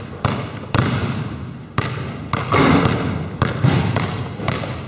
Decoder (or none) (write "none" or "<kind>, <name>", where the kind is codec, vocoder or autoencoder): none